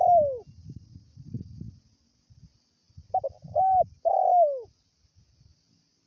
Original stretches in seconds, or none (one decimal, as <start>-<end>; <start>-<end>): 0.0-6.1